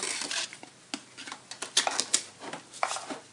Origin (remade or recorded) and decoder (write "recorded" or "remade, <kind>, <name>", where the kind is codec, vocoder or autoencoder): recorded